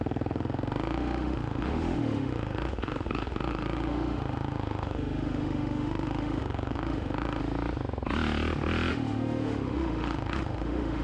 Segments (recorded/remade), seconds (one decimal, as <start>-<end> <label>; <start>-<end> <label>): 0.0-7.4 remade; 7.4-8.9 recorded; 8.9-11.0 remade